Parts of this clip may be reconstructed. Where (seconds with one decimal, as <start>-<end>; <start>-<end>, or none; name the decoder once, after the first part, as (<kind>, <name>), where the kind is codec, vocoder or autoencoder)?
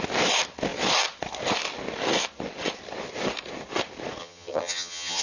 4.2-5.2 (vocoder, HiFi-GAN)